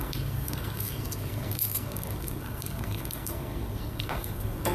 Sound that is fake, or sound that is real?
fake